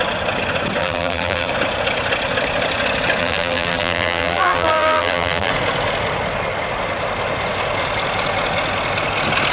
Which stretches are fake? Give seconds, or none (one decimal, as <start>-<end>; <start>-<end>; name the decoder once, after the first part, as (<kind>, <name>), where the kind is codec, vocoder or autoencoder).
0.8-1.5 (vocoder, BigVGAN v2); 3.2-5.5

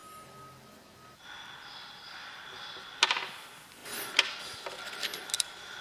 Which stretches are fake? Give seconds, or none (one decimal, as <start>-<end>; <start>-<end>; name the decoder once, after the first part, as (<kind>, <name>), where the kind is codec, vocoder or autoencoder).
0.0-1.2 (vocoder, BigVGAN v2)

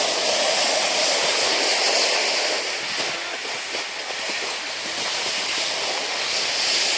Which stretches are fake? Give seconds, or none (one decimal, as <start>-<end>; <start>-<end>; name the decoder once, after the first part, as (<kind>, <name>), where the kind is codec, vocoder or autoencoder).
none

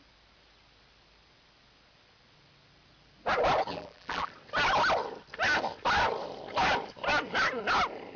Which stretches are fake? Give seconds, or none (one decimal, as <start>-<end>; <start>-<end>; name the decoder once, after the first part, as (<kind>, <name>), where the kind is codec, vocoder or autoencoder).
3.7-4.3 (vocoder, BigVGAN v2)